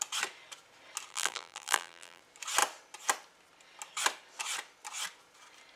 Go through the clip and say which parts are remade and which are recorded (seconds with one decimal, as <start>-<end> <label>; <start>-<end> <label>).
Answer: 0.0-1.1 recorded; 1.1-2.2 remade; 2.2-5.8 recorded

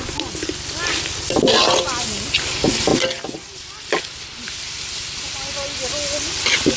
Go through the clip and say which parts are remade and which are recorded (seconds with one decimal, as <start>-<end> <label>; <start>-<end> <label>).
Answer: 0.0-6.8 recorded

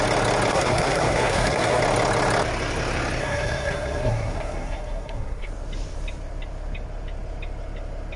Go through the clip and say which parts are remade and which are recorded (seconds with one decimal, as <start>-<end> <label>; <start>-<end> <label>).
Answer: 0.0-0.5 recorded; 0.5-1.8 remade; 1.8-3.2 recorded; 3.2-5.5 remade; 5.5-8.2 recorded

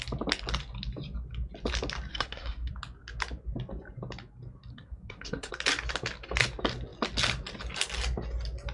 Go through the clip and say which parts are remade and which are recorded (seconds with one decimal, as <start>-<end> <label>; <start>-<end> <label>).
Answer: 0.0-2.1 recorded; 2.1-2.7 remade; 2.7-4.7 recorded; 4.7-5.5 remade; 5.5-8.7 recorded